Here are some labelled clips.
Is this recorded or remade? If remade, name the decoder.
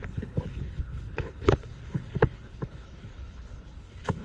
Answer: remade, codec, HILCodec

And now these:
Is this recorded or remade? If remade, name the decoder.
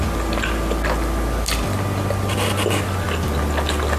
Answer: recorded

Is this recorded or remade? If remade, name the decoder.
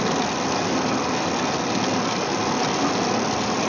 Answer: recorded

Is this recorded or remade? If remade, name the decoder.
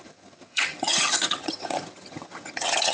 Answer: remade, vocoder, HiFi-GAN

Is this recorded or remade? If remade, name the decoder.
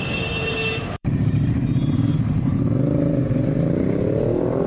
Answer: remade, vocoder, BigVGAN v2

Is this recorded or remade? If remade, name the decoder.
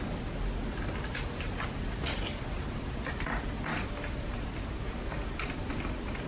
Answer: recorded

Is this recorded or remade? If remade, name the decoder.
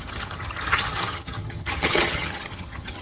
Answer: remade, vocoder, HiFi-GAN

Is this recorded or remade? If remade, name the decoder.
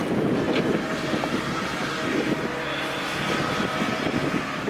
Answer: recorded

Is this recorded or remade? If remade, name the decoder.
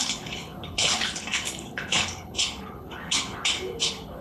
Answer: remade, codec, HILCodec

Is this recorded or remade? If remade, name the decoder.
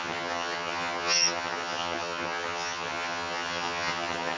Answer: remade, vocoder, HiFi-GAN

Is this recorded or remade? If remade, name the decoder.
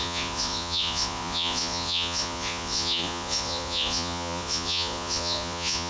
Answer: remade, vocoder, Vocos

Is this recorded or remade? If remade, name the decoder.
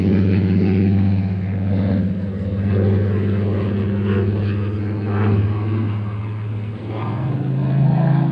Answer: remade, codec, SNAC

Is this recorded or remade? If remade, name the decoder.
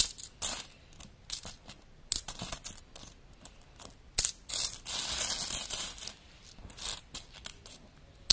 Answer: recorded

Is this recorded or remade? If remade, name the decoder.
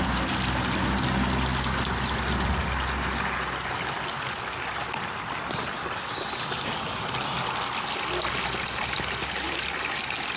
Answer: recorded